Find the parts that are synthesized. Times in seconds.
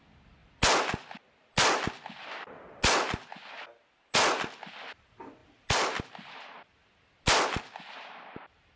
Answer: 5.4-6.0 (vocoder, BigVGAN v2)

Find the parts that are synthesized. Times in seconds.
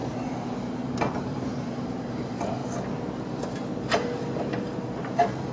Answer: 0.6-2.6 (vocoder, BigVGAN v2); 3.9-5.5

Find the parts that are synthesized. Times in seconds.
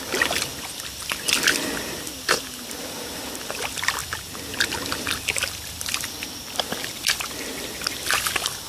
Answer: none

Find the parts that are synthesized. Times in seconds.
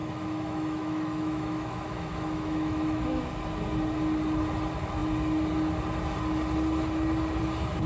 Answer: 0.0-3.2 (autoencoder, DAC-VAE)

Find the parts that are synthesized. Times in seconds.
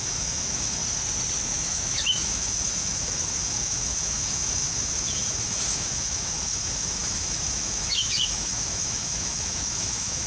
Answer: 0.0-0.8 (autoencoder, DAC-VAE); 1.4-10.3